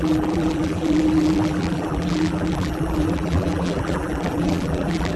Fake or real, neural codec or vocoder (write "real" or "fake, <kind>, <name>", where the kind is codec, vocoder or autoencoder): fake, vocoder, BigVGAN v2